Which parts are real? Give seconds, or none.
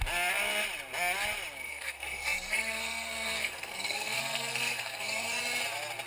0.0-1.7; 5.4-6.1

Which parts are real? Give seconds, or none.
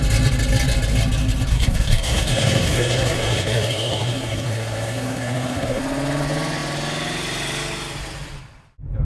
0.0-1.5; 5.8-9.0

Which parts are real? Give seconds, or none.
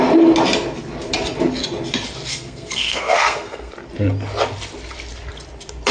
0.0-2.3; 3.7-5.9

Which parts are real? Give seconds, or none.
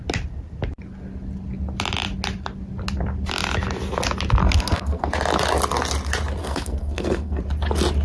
0.0-4.4; 5.1-6.4; 7.4-8.0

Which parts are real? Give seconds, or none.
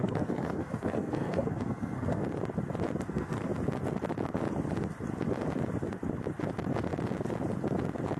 2.2-3.1; 3.5-8.2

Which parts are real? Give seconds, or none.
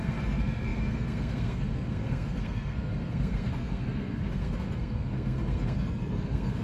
none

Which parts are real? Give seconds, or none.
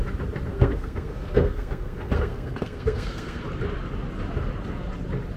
0.0-0.5; 3.4-5.4